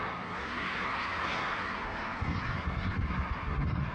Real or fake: fake